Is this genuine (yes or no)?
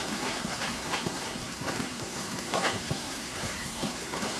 no